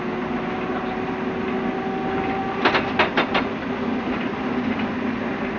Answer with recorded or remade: recorded